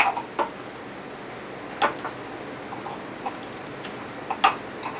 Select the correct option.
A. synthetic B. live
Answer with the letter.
B